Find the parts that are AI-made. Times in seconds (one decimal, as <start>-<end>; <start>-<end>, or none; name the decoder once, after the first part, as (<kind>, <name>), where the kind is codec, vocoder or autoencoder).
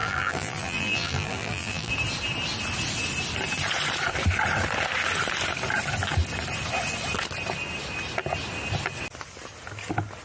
0.0-1.9 (vocoder, BigVGAN v2)